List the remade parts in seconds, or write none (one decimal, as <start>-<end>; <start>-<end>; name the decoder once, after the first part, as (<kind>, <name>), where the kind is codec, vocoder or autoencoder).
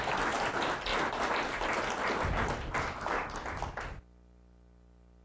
none